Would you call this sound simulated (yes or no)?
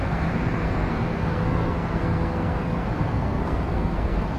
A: yes